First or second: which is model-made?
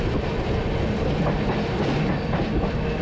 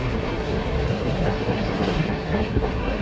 second